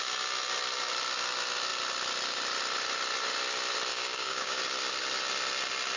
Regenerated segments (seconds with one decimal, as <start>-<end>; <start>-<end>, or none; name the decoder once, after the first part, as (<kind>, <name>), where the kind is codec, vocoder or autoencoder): 3.9-4.6 (codec, DAC)